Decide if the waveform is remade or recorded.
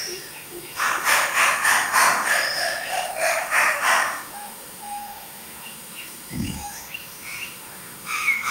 remade